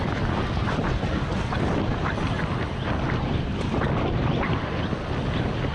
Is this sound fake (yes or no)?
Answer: no